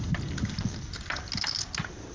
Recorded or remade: recorded